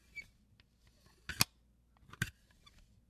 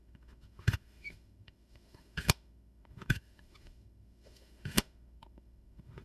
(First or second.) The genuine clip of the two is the first